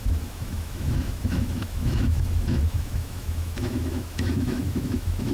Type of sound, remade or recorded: remade